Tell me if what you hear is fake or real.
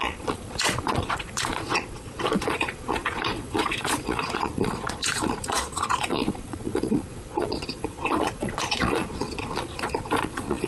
fake